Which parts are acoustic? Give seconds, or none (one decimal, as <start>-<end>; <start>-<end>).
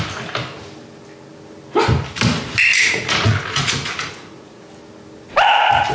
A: 0.0-2.7; 4.6-5.9